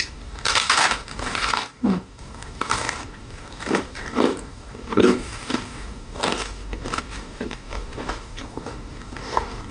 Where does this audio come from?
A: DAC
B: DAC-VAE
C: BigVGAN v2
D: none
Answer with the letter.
A